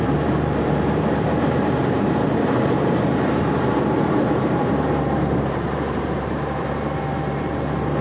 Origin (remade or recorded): remade